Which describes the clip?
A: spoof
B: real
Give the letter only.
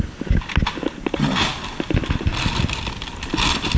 B